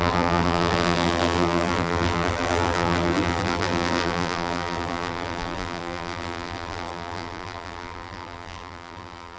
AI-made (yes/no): yes